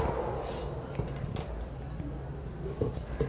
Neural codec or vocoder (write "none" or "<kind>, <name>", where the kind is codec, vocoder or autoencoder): none